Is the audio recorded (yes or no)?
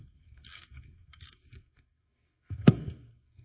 no